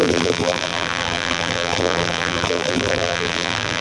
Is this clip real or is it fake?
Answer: fake